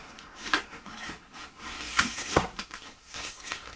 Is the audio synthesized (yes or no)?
yes